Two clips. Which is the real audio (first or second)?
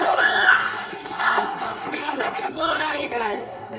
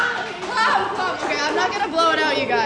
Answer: second